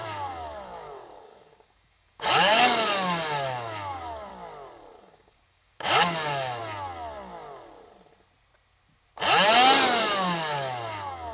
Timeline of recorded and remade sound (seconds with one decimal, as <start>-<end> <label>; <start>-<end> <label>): 0.0-4.3 remade; 4.3-5.0 recorded; 5.0-6.6 remade; 6.6-10.0 recorded; 10.0-11.3 remade